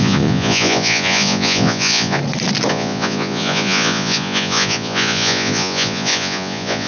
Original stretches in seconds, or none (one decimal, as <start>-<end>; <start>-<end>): 2.2-2.7